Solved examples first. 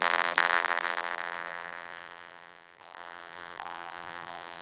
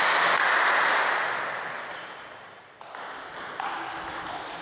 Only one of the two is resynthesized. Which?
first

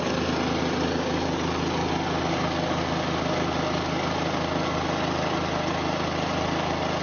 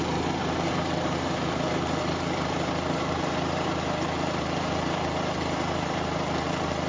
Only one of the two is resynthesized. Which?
second